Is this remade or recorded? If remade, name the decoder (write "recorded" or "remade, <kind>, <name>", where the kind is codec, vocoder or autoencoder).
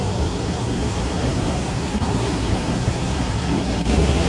remade, codec, SNAC